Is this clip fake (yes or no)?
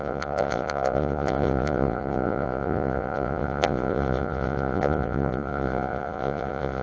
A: yes